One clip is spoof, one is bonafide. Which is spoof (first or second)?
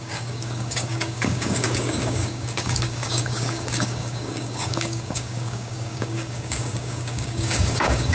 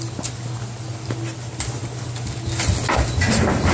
first